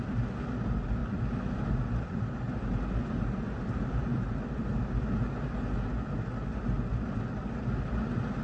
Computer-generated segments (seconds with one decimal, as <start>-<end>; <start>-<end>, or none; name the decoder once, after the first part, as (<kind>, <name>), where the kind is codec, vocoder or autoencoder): 1.0-5.1 (vocoder, BigVGAN v2)